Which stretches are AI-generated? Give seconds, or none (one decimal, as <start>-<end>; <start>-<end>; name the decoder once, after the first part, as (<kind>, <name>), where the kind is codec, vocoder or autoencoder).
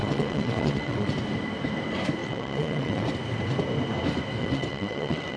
0.0-1.1 (vocoder, WaveNeXt); 2.2-3.1; 4.4-5.4